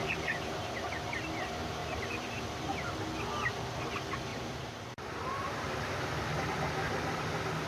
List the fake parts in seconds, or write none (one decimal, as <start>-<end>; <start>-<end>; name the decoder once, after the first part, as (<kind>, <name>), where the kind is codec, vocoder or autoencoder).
0.0-0.7 (vocoder, BigVGAN v2); 1.8-2.9; 4.3-6.6